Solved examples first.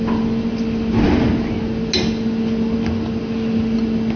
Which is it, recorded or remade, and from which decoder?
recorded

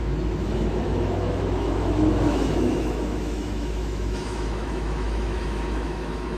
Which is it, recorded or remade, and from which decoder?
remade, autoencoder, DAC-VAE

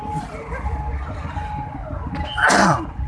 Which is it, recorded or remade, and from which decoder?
recorded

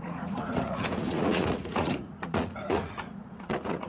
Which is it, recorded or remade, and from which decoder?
remade, vocoder, Vocos